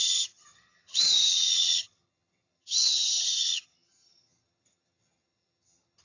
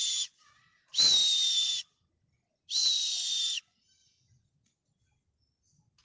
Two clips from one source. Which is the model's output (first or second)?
first